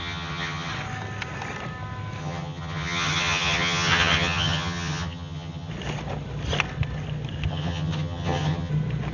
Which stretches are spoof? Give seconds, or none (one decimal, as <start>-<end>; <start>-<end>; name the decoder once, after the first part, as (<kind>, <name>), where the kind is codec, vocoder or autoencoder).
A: 0.0-0.7 (vocoder, HiFi-GAN); 2.2-5.7; 7.5-8.7